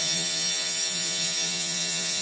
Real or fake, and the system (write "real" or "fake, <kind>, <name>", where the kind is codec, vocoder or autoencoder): fake, vocoder, Vocos